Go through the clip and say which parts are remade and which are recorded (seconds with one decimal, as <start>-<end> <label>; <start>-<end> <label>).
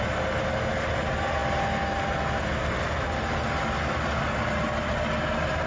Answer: 0.0-5.7 recorded